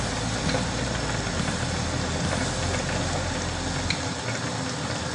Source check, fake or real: real